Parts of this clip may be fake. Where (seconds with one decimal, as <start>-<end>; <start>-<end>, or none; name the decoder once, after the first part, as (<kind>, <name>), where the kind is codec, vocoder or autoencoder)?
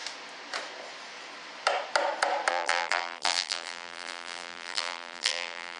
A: 2.5-5.8 (vocoder, BigVGAN v2)